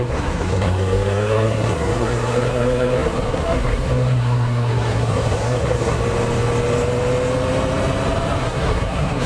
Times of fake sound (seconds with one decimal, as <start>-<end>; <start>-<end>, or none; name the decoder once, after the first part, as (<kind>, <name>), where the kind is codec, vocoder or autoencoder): 0.0-6.0 (codec, SNAC); 8.4-9.3